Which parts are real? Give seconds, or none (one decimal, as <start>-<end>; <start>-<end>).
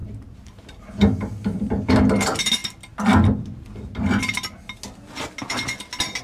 0.0-6.2